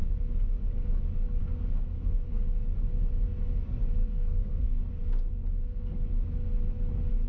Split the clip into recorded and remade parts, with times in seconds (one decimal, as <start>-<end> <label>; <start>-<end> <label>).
0.0-1.4 recorded; 1.4-2.4 remade; 2.4-4.0 recorded; 4.0-4.8 remade; 4.8-7.3 recorded